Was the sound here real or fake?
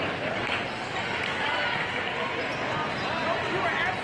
real